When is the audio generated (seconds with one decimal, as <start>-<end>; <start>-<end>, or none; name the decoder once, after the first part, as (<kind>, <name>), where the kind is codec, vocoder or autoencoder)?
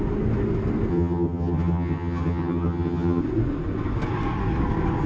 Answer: 0.9-3.2 (vocoder, HiFi-GAN)